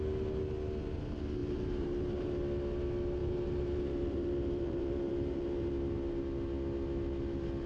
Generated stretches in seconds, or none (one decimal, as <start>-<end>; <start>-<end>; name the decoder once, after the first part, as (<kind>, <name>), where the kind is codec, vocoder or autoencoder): 1.4-2.4 (vocoder, BigVGAN v2); 3.2-5.7